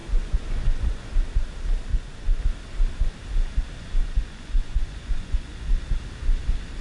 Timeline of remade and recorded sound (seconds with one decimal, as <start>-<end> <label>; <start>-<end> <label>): 0.0-1.1 remade; 1.1-1.9 recorded; 1.9-2.4 remade; 2.4-4.0 recorded; 4.0-5.7 remade; 5.7-6.8 recorded